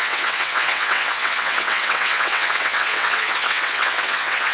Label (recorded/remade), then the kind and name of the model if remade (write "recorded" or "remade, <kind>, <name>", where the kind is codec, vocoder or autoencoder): remade, vocoder, WaveNeXt